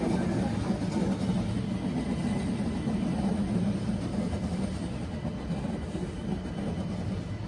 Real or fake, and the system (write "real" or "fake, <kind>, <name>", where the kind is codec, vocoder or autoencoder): real